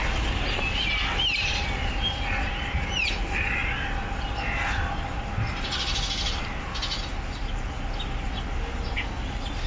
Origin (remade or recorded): recorded